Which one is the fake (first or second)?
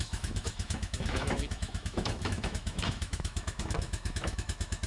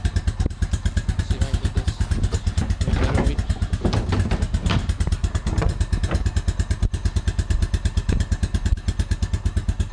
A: first